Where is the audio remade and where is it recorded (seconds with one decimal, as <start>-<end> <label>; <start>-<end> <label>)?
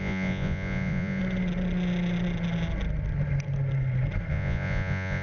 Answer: 0.0-1.2 remade; 1.2-4.3 recorded; 4.3-5.2 remade